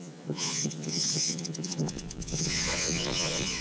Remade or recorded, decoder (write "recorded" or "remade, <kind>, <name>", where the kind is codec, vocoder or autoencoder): remade, vocoder, Vocos